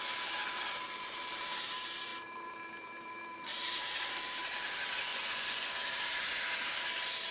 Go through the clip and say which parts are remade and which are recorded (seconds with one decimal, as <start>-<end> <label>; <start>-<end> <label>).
0.0-5.1 recorded; 5.1-5.8 remade; 5.8-7.3 recorded